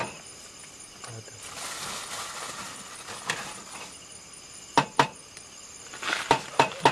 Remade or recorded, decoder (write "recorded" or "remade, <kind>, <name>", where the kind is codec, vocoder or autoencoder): recorded